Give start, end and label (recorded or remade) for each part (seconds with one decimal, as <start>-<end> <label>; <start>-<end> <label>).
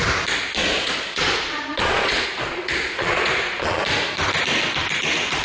0.0-0.6 recorded; 0.6-3.8 remade; 3.8-5.4 recorded